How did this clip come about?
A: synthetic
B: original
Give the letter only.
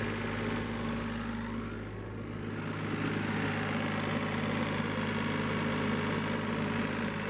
B